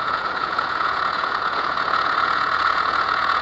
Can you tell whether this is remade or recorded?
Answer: remade